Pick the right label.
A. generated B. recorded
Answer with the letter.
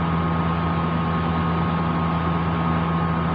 B